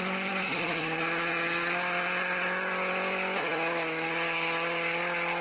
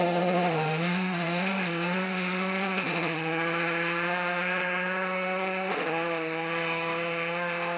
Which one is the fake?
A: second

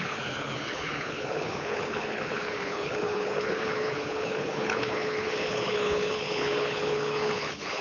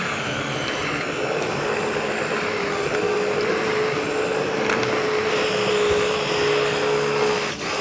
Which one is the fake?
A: first